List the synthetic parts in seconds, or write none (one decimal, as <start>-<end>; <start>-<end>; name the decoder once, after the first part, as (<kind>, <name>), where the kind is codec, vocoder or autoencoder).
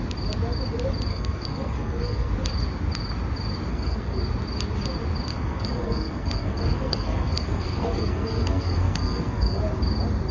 1.1-2.3 (codec, SNAC); 3.7-4.2; 5.3-9.6